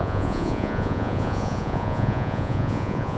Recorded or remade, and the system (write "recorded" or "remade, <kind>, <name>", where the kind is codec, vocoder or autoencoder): remade, vocoder, Vocos